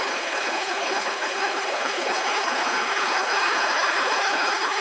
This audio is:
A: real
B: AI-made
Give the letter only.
B